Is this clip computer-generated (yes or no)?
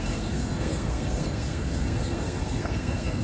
yes